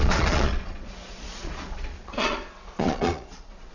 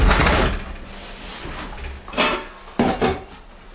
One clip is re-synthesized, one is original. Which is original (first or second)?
second